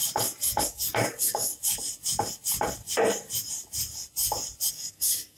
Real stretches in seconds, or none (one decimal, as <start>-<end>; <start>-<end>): 0.0-0.6; 1.5-4.7